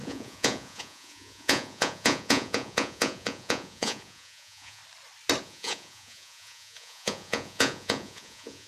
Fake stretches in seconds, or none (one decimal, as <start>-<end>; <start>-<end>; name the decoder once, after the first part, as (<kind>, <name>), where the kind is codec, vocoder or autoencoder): 0.0-4.8 (vocoder, Vocos); 5.4-8.7